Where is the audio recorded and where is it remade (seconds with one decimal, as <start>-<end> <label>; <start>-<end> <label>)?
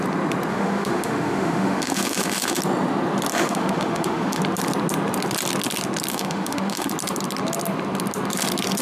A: 0.0-0.5 recorded; 0.5-2.6 remade; 2.6-3.3 recorded; 3.3-4.4 remade; 4.4-6.1 recorded; 6.1-6.9 remade; 6.9-8.8 recorded